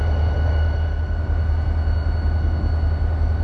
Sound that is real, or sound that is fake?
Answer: real